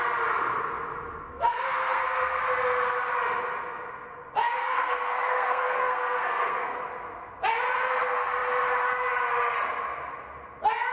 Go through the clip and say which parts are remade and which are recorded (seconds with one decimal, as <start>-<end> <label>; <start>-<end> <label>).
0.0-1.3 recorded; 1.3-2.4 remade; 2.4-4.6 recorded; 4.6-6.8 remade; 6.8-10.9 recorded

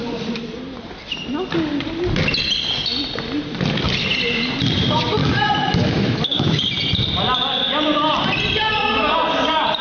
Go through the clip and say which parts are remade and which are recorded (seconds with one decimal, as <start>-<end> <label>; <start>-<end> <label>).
0.0-5.2 recorded; 5.2-6.6 remade; 6.6-9.8 recorded

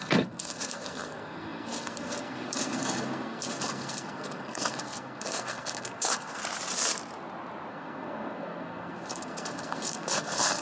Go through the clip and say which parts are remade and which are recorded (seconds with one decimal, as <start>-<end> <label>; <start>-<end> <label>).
0.0-6.4 remade; 6.4-7.7 recorded; 7.7-10.6 remade